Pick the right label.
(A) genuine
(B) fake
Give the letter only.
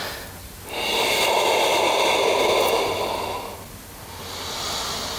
A